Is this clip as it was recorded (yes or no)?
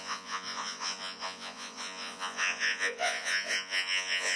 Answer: no